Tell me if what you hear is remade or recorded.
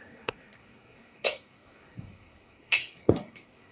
remade